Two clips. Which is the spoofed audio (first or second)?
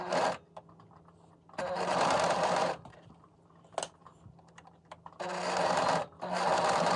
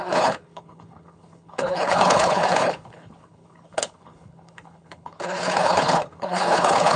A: second